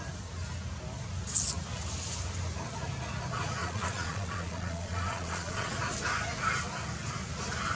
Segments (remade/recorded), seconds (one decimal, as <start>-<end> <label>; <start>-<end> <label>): 0.0-3.6 recorded; 3.6-5.7 remade; 5.7-7.8 recorded